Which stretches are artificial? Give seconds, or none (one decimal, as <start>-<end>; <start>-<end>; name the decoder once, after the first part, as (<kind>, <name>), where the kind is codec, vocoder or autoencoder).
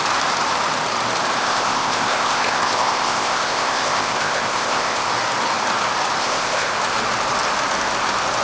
1.4-5.1 (codec, ZipCodec); 6.2-6.7